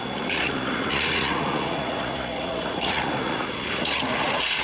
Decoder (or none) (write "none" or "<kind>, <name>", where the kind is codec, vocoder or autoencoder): vocoder, Vocos